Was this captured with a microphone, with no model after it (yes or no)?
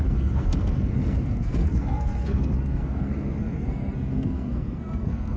no